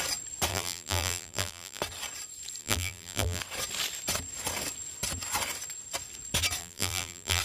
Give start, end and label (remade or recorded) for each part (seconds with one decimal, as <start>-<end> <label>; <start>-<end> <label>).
0.0-0.5 recorded; 0.5-1.8 remade; 1.8-2.6 recorded; 2.6-3.4 remade; 3.4-6.6 recorded; 6.6-7.4 remade